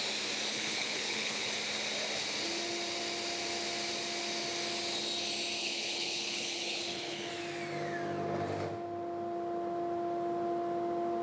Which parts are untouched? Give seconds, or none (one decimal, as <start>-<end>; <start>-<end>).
0.0-0.5; 1.5-5.6; 7.3-11.2